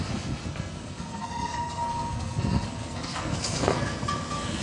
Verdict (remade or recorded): remade